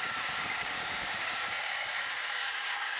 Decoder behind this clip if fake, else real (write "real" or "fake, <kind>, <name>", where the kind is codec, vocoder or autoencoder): fake, codec, DAC